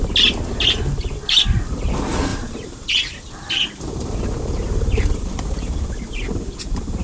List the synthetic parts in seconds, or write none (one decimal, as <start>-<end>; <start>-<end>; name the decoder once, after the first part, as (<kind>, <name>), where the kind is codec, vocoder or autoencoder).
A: 2.3-6.3 (vocoder, BigVGAN v2)